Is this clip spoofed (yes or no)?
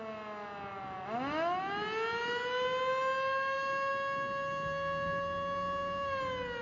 no